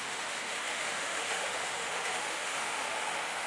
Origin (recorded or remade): remade